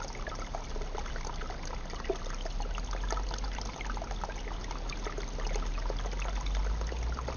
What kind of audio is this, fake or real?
real